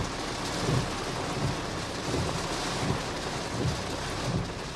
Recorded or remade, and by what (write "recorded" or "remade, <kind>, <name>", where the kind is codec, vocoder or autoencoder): recorded